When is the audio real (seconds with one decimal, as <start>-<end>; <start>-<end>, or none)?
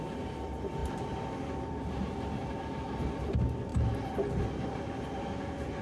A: 0.0-5.8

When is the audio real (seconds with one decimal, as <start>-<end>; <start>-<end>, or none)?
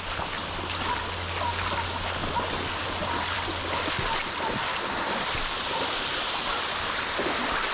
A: 0.0-2.2; 4.8-7.7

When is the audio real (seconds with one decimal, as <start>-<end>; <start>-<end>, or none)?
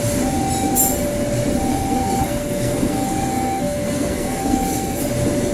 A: 0.0-1.7; 5.0-5.5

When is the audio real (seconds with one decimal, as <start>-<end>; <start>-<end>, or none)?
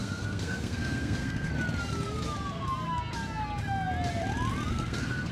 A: 1.5-4.7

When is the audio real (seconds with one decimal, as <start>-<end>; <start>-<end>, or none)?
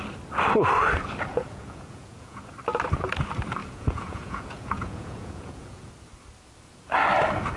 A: 0.0-1.3; 2.5-3.6; 5.9-7.6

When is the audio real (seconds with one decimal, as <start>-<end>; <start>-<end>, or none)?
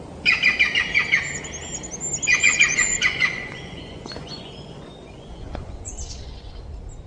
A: 0.0-2.3; 6.5-7.1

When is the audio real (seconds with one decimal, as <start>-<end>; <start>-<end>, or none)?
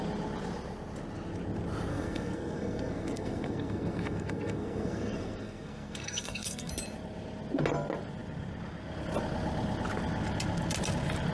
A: 0.0-1.9; 6.7-11.3